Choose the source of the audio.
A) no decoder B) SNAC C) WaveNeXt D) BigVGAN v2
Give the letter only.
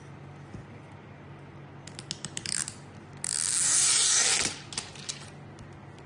A